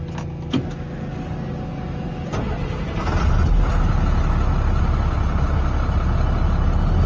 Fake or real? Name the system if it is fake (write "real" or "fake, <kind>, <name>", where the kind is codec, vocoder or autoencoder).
real